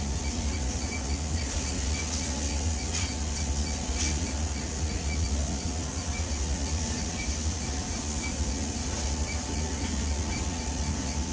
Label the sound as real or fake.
fake